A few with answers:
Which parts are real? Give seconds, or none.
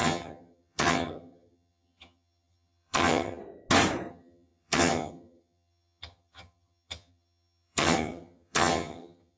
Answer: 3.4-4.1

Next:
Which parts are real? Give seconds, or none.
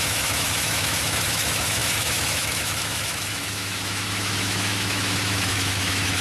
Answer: none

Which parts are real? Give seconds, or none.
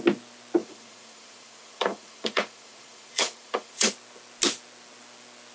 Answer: 0.0-0.6; 3.9-5.5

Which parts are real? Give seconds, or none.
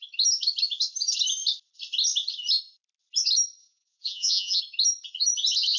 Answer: 0.0-3.6; 4.6-5.8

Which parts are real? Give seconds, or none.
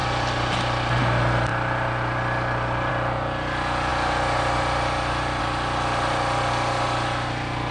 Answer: 0.0-7.7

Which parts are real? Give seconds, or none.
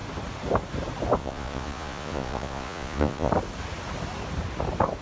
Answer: 0.0-1.2; 3.3-5.0